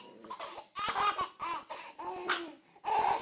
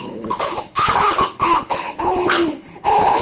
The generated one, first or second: second